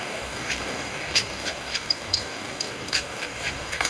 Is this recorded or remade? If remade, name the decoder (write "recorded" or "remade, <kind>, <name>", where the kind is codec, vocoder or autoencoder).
remade, codec, DAC